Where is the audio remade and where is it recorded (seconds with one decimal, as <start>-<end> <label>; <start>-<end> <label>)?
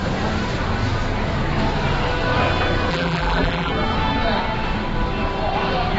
0.0-2.9 recorded; 2.9-3.7 remade; 3.7-6.0 recorded